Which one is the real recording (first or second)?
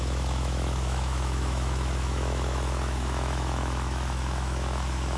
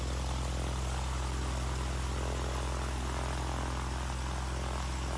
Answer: second